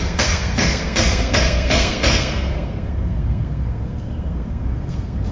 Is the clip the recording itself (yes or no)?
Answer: no